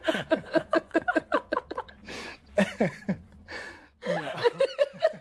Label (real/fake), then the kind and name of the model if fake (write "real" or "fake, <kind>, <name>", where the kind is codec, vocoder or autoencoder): fake, vocoder, Vocos